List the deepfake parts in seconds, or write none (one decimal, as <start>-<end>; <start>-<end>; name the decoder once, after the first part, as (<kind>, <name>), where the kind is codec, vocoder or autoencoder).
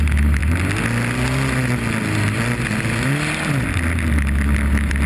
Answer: none